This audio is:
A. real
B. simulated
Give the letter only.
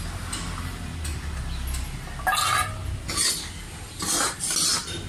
A